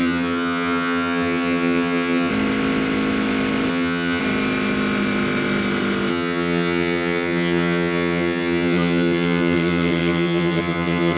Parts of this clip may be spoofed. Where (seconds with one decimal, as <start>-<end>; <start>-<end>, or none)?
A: 0.0-2.3; 3.7-4.2; 6.1-11.2